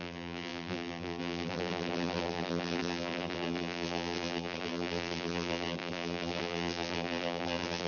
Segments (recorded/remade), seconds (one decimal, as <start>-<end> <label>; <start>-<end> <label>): 0.0-7.9 remade